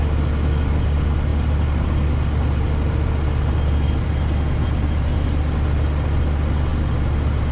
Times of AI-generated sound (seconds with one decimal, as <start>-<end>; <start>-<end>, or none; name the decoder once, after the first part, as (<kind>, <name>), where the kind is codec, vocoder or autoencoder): none